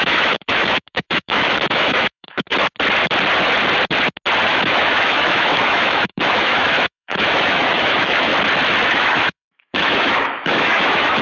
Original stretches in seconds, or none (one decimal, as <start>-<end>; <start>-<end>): 2.5-4.5; 8.3-8.9